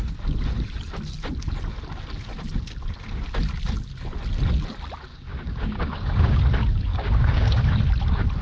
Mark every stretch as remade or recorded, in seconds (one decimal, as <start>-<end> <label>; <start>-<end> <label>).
0.0-5.1 recorded; 5.1-6.4 remade; 6.4-6.9 recorded; 6.9-7.6 remade; 7.6-8.4 recorded